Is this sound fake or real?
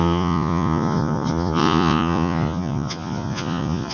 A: fake